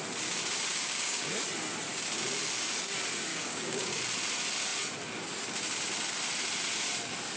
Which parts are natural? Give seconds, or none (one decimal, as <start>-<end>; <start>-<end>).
0.0-0.7; 1.3-3.3; 4.0-7.4